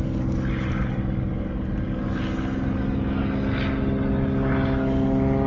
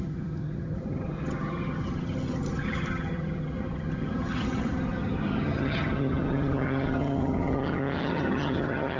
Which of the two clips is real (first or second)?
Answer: first